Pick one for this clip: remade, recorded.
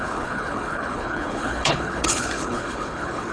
remade